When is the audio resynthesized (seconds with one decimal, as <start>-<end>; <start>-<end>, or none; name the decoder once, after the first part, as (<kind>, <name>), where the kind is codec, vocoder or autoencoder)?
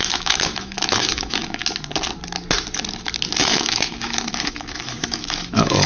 0.0-1.6 (autoencoder, DAC-VAE); 3.4-5.9